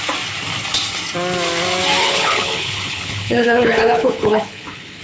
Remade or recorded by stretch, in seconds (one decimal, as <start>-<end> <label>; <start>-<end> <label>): 0.0-2.0 recorded; 2.0-5.0 remade